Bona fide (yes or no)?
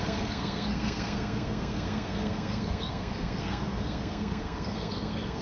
no